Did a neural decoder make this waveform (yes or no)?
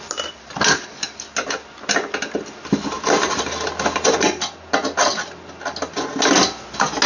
no